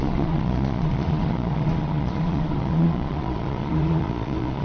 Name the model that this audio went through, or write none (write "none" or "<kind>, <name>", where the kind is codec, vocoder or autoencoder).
vocoder, Vocos